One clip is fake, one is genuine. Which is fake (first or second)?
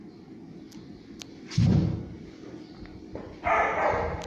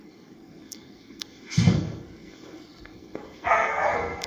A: second